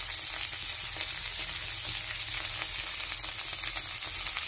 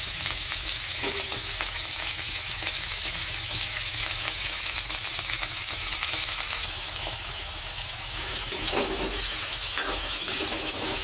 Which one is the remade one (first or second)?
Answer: second